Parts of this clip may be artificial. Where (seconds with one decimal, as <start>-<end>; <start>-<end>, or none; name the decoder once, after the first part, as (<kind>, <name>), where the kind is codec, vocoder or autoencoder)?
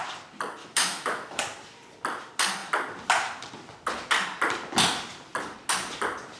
0.6-1.4 (autoencoder, DAC-VAE)